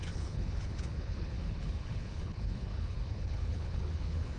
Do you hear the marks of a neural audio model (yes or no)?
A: yes